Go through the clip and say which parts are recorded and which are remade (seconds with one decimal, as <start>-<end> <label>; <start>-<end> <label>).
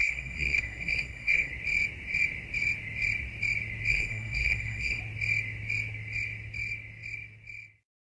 0.0-1.5 remade; 1.5-3.9 recorded; 3.9-5.0 remade; 5.0-8.2 recorded